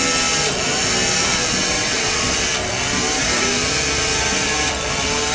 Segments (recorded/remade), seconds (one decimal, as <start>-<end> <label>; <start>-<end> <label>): 0.0-1.6 recorded; 1.6-2.2 remade; 2.2-5.3 recorded